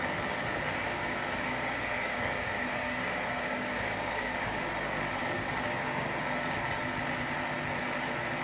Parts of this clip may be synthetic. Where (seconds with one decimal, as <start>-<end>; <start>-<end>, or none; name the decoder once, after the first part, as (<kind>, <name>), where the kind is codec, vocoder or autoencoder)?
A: 0.8-4.7 (codec, DAC); 5.2-6.1